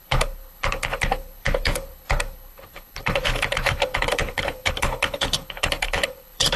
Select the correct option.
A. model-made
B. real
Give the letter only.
A